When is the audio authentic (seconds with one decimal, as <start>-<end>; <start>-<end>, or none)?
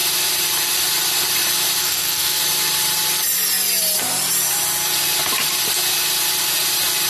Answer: 0.0-1.8; 2.4-7.1